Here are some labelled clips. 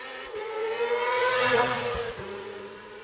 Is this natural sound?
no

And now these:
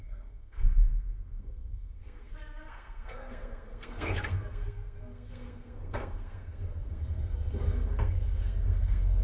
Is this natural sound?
no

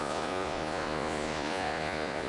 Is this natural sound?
no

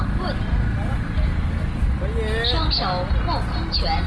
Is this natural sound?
yes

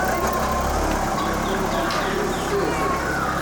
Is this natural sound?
yes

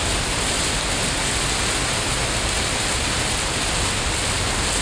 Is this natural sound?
yes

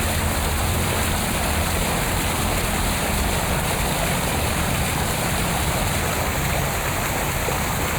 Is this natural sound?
no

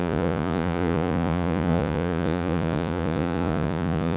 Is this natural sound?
no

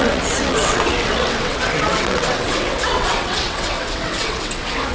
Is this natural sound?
no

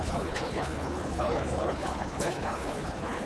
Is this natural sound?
no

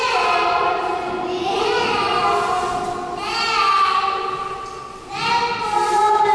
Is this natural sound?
yes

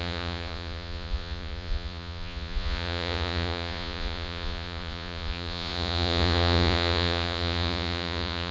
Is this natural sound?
no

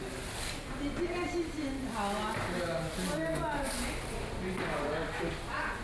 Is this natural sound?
yes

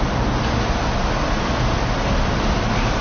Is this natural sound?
yes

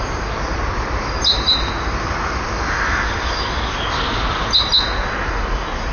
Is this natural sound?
yes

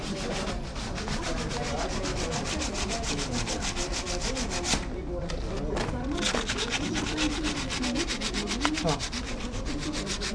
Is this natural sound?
yes